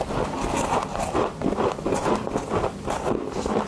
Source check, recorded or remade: recorded